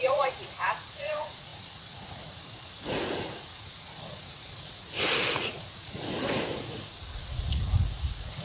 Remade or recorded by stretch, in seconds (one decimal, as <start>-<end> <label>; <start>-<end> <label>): 0.0-8.4 remade